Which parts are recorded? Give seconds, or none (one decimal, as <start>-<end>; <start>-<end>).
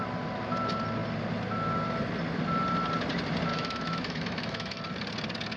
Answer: 0.0-3.5; 4.8-5.6